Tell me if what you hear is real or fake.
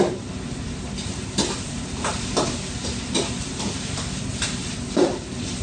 real